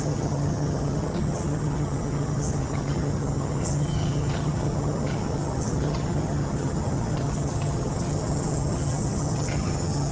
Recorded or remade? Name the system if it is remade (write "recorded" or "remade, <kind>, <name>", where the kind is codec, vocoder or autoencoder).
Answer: remade, vocoder, HiFi-GAN